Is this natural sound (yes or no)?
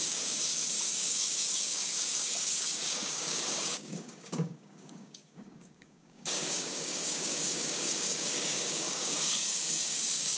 no